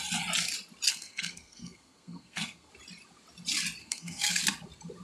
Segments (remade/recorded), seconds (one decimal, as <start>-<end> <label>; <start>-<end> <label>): 0.0-0.9 recorded; 0.9-2.7 remade; 2.7-3.8 recorded; 3.8-4.4 remade; 4.4-5.0 recorded